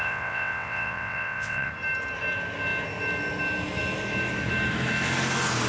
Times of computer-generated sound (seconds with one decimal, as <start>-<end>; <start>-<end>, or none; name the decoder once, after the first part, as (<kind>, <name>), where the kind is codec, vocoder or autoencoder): 0.0-1.7 (vocoder, WaveNeXt)